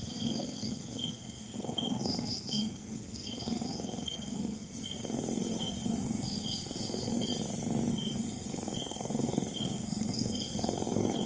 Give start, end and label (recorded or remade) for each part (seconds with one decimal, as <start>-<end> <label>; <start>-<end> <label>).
0.0-7.3 remade; 7.3-7.9 recorded; 7.9-11.3 remade

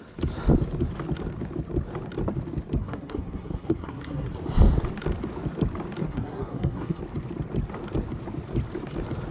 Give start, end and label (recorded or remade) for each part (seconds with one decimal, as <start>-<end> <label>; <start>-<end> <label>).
0.0-2.8 recorded; 2.8-4.3 remade; 4.3-6.0 recorded; 6.0-7.0 remade; 7.0-9.3 recorded

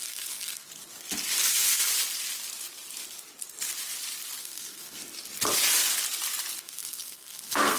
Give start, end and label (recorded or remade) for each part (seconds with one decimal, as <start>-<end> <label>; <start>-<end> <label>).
0.0-0.7 remade; 0.7-1.5 recorded; 1.5-1.9 remade; 1.9-4.4 recorded; 4.4-5.0 remade; 5.0-6.6 recorded; 6.6-7.8 remade

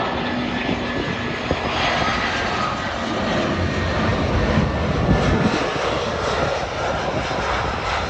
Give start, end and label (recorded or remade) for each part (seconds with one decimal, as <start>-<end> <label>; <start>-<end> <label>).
0.0-8.1 recorded

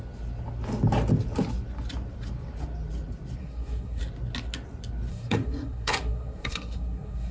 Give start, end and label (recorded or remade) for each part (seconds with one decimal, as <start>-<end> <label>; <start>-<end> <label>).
0.0-3.4 recorded; 3.4-4.0 remade; 4.0-5.1 recorded; 5.1-7.3 remade